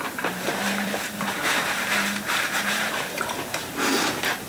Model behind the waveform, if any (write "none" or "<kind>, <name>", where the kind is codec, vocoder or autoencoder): vocoder, BigVGAN v2